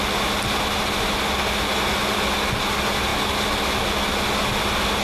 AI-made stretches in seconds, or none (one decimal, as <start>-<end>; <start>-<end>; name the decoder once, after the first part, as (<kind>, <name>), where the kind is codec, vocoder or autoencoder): none